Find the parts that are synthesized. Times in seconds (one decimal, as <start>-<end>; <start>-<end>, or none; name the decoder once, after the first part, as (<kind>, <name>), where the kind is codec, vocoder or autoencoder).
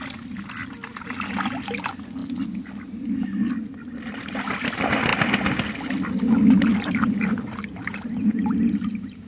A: 6.7-9.3 (vocoder, BigVGAN v2)